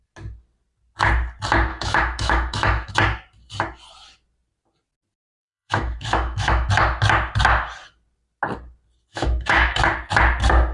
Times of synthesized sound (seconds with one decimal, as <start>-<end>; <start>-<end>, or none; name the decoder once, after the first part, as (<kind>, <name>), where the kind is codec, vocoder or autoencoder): 1.7-2.9 (autoencoder, DAC-VAE); 5.4-6.7; 9.1-9.8